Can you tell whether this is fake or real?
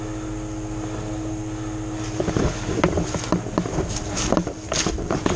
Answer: real